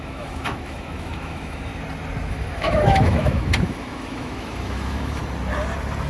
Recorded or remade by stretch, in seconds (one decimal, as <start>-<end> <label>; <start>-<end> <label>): 0.0-1.7 remade; 1.7-2.3 recorded; 2.3-5.2 remade; 5.2-6.1 recorded